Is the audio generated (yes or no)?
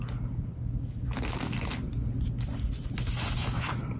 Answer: no